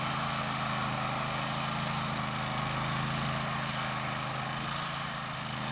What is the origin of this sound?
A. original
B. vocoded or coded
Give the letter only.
A